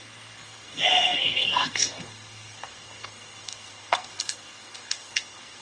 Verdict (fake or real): fake